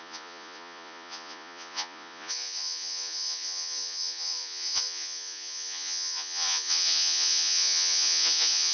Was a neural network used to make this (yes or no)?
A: yes